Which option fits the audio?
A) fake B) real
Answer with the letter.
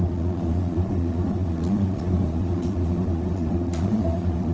A